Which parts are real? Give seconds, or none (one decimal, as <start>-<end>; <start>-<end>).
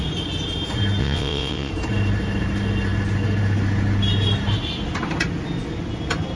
0.0-1.0; 1.7-6.4